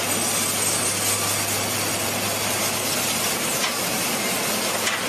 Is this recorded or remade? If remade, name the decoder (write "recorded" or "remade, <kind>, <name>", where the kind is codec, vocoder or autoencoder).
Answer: recorded